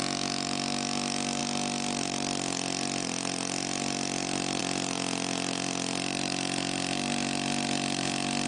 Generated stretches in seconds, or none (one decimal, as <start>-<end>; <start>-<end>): none

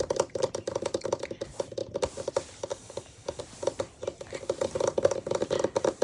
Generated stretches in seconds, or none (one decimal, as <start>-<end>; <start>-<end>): 2.7-3.4

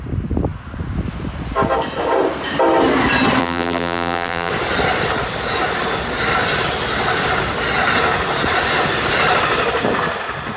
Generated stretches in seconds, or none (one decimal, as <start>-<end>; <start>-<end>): 3.4-4.5

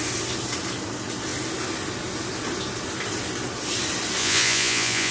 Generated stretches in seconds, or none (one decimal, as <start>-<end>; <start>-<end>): 4.2-5.1

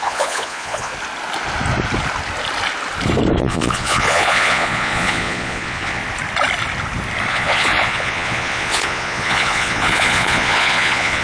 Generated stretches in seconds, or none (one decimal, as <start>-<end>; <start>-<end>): 0.0-0.9; 3.4-6.0; 7.3-11.2

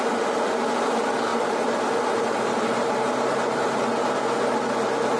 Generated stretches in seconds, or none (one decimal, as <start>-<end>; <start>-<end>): 1.3-3.8